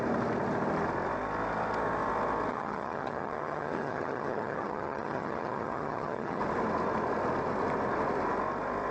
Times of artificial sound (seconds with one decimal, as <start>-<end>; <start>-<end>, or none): 2.5-6.4